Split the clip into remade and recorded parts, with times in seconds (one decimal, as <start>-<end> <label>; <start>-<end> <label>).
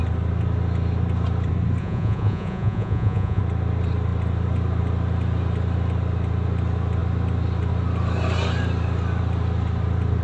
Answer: 0.0-1.8 recorded; 1.8-3.4 remade; 3.4-10.2 recorded